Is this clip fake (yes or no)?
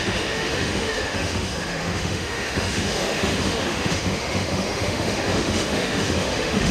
yes